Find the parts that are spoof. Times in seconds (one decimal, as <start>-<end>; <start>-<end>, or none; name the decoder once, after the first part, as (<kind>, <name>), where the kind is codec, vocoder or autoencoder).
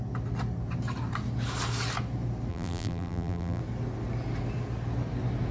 2.5-3.6 (vocoder, BigVGAN v2)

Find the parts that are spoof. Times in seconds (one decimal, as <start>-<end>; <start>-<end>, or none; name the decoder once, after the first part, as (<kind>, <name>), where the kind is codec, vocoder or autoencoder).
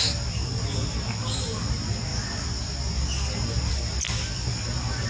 none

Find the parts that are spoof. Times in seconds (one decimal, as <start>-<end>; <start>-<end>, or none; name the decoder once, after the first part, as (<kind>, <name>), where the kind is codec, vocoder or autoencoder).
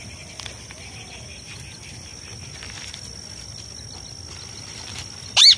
none